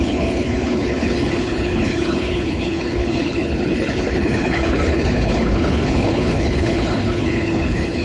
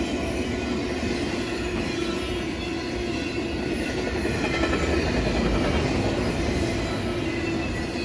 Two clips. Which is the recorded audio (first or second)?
second